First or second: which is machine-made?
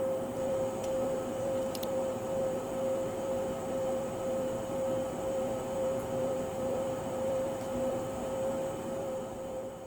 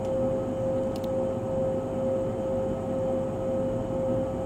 first